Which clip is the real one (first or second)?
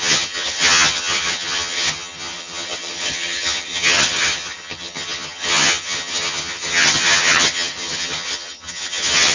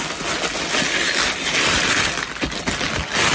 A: second